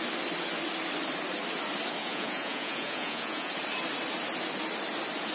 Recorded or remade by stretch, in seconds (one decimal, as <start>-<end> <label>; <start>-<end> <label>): 0.0-2.0 recorded; 2.0-3.5 remade; 3.5-5.3 recorded

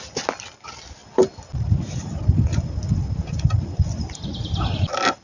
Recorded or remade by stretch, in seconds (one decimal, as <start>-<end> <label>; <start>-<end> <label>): 0.0-5.2 recorded